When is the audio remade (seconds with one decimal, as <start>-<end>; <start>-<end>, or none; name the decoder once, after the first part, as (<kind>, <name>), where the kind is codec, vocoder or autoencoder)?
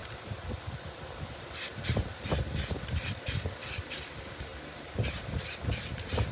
4.5-6.3 (vocoder, BigVGAN v2)